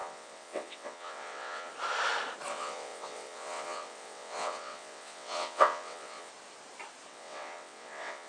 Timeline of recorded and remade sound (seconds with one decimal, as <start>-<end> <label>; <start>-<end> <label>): 0.0-1.7 remade; 1.7-2.5 recorded; 2.5-6.3 remade; 6.3-7.1 recorded; 7.1-8.3 remade